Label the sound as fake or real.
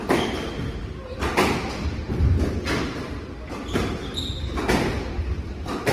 real